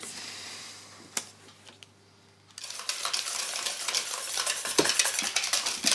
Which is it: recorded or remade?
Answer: recorded